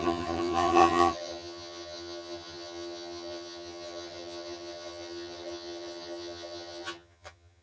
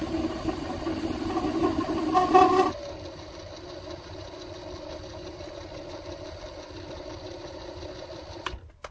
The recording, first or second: second